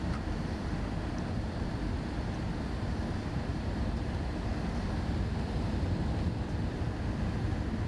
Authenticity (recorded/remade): recorded